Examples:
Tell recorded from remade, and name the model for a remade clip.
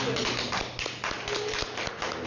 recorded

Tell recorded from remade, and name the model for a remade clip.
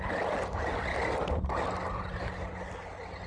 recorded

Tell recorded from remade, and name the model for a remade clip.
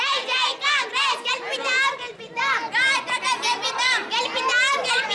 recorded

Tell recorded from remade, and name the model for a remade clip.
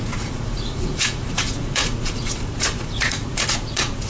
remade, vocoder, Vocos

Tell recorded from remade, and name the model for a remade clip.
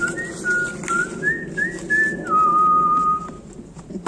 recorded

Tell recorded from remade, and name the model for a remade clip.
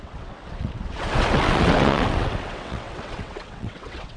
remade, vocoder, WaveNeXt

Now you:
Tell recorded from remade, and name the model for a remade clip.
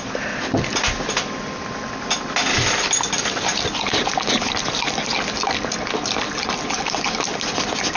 recorded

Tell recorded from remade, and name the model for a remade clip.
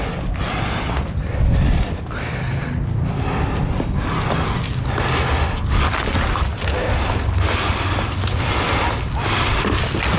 recorded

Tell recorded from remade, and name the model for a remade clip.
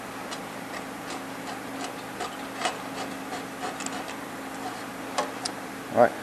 recorded